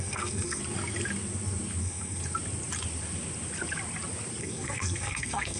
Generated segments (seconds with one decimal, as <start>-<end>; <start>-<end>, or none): 0.0-0.6; 1.8-2.2; 4.4-5.6